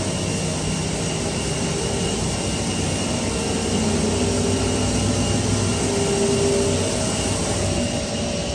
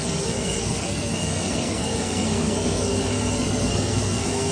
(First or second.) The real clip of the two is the first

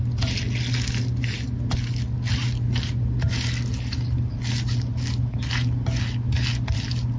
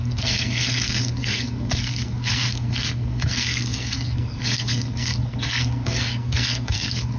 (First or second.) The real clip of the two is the first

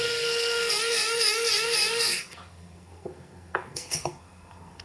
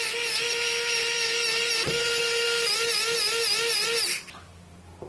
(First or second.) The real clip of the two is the second